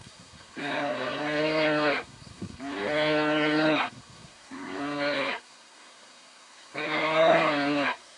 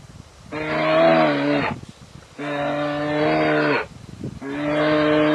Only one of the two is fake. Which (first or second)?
first